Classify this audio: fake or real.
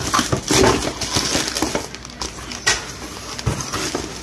real